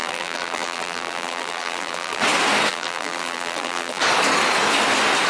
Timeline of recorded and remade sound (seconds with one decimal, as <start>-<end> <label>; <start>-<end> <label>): 0.0-2.2 remade; 2.2-2.7 recorded; 2.7-4.0 remade; 4.0-5.3 recorded